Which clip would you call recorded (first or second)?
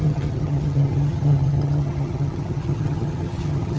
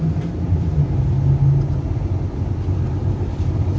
second